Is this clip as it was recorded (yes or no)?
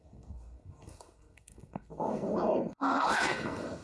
no